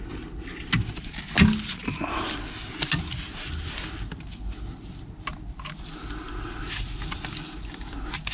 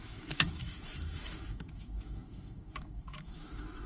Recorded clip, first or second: first